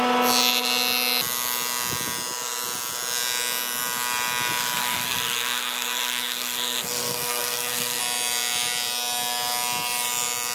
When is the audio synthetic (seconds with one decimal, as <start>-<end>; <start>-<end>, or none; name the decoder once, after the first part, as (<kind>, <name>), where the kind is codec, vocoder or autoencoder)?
4.8-8.0 (codec, SNAC)